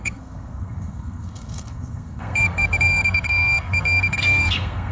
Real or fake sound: fake